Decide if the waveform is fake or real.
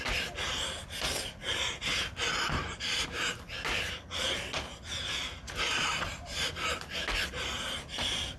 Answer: real